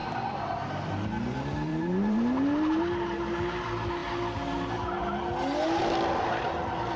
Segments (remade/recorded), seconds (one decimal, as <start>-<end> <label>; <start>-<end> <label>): 0.0-1.7 recorded; 1.7-2.8 remade; 2.8-7.0 recorded